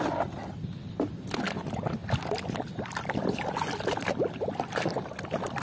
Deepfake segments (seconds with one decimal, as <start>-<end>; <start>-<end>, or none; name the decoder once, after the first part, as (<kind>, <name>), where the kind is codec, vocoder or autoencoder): none